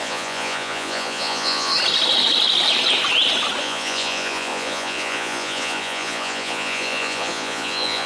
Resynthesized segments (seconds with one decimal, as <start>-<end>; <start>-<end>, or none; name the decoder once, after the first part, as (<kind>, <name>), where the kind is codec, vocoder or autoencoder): 0.0-1.7 (vocoder, Vocos); 3.6-8.1